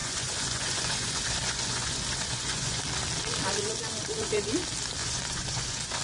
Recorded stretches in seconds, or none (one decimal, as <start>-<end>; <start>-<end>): 2.8-5.0